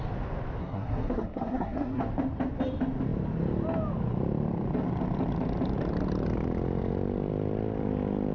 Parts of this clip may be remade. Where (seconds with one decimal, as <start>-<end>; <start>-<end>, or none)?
0.6-2.0